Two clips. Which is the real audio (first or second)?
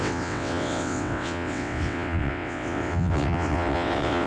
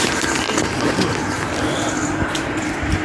second